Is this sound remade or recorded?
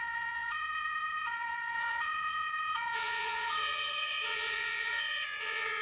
remade